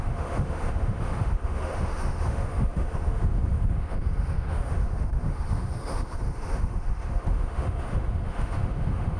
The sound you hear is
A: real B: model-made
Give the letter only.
B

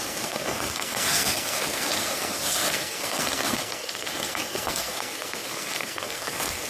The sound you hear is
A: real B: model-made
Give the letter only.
B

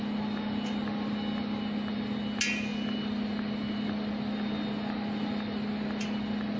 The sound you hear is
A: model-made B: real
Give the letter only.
B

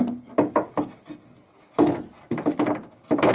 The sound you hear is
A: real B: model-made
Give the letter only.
A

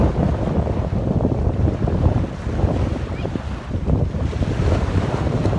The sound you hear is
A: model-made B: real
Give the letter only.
B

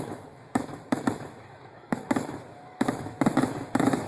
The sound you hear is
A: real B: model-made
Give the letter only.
B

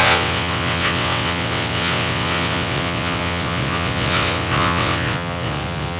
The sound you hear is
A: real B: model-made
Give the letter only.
B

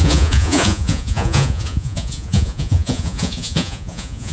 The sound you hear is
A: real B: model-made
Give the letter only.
B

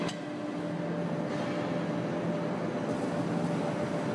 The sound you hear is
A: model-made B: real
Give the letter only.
B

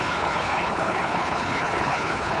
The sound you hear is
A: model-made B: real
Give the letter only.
A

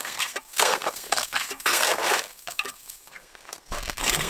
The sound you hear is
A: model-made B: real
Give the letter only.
A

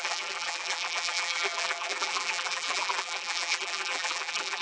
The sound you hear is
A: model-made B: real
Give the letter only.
A